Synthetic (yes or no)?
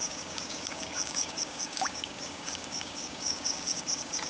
yes